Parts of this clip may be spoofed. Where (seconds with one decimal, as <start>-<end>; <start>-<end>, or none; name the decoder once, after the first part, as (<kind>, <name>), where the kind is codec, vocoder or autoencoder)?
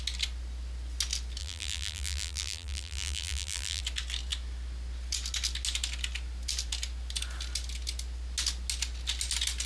1.4-3.8 (vocoder, BigVGAN v2)